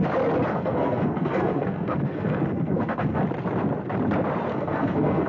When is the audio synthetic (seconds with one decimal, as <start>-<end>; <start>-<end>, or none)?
0.5-3.2; 4.5-5.3